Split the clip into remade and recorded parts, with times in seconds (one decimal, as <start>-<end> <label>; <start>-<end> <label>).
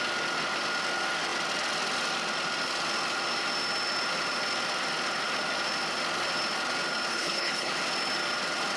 0.0-7.1 recorded; 7.1-7.7 remade; 7.7-8.8 recorded